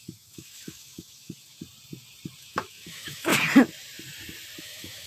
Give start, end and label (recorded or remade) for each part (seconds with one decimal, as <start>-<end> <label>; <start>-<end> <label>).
0.0-1.6 remade; 1.6-2.4 recorded; 2.4-3.3 remade; 3.3-4.6 recorded; 4.6-5.1 remade